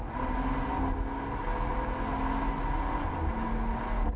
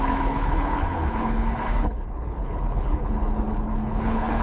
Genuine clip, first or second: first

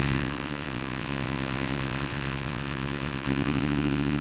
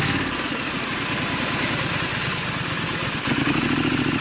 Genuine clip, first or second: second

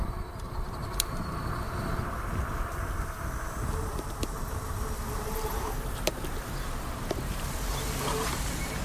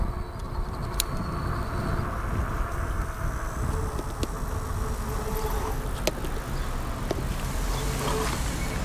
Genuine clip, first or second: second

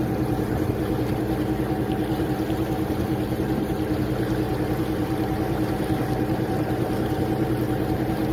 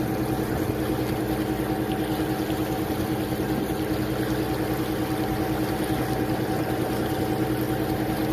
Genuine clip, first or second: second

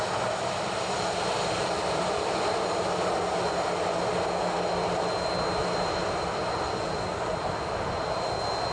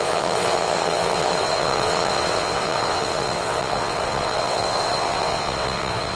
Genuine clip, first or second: first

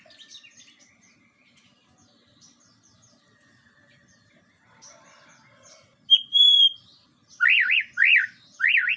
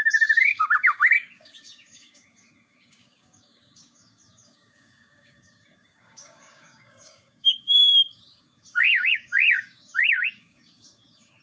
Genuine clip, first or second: first